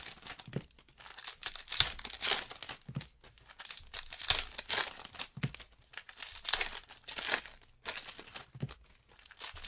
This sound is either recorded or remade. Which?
recorded